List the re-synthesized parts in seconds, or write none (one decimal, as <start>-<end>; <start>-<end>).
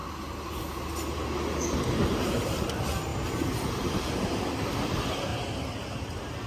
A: 2.3-5.3